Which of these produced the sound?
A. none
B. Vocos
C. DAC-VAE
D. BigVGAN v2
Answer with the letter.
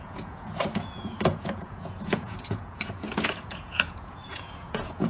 B